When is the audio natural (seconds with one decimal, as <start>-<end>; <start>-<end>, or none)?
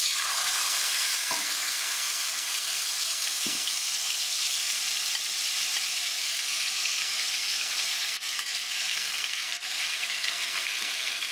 4.8-5.9